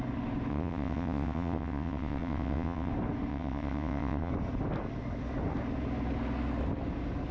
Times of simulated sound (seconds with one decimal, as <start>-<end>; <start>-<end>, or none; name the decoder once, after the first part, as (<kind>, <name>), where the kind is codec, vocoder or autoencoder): 0.5-2.9 (vocoder, WaveNeXt); 3.3-4.3